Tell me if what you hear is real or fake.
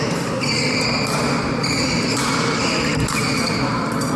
real